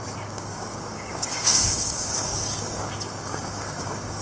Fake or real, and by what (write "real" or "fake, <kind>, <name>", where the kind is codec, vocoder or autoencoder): fake, codec, DAC